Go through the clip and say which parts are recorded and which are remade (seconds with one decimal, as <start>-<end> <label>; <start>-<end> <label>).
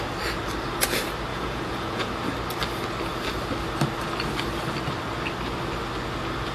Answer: 0.0-1.3 recorded; 1.3-2.1 remade; 2.1-6.5 recorded